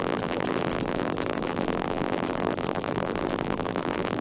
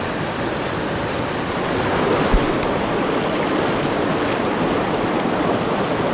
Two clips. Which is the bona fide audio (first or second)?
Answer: second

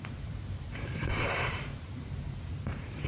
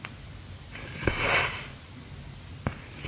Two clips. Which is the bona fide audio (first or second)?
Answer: second